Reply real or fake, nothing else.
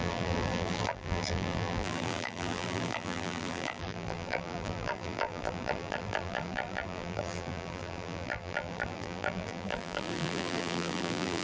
fake